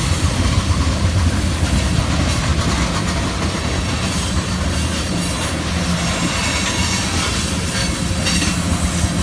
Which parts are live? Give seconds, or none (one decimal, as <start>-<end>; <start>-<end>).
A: 0.0-9.2